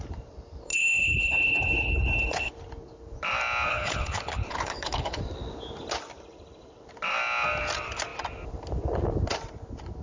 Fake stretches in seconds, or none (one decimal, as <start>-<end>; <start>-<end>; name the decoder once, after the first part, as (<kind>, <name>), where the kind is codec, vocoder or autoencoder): 0.7-2.5 (codec, HILCodec); 3.7-5.2